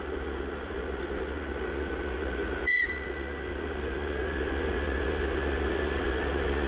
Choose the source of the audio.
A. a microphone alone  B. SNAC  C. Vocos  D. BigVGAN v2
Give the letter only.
C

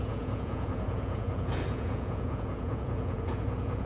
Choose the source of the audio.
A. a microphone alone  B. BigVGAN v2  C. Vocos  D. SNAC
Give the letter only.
C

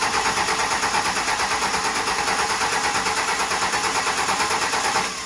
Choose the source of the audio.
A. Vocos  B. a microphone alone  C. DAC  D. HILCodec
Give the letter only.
B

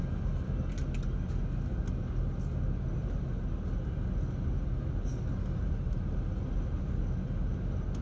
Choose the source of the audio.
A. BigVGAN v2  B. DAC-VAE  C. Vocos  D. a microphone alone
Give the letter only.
D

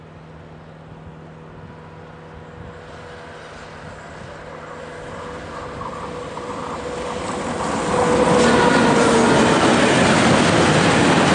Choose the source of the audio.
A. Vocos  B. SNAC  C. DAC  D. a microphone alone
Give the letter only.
D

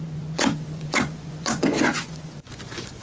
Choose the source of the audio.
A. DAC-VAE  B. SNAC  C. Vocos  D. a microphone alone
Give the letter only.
C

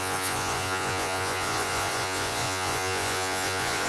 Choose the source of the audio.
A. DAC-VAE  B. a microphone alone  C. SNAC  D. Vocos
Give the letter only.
D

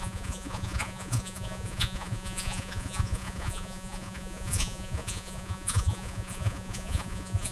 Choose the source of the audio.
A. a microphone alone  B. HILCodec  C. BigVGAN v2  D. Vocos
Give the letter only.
D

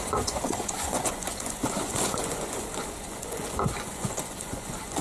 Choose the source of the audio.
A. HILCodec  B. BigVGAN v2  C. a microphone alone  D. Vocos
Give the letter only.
D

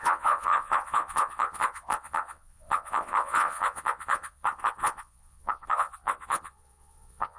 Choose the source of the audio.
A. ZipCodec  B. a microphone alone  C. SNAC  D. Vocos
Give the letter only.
D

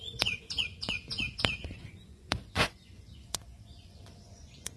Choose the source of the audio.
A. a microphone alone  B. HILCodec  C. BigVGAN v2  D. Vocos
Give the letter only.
D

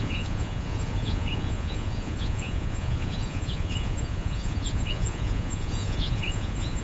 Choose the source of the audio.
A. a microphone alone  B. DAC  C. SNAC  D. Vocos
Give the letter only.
D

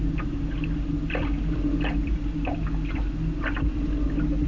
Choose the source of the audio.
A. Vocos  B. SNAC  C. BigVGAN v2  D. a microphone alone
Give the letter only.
D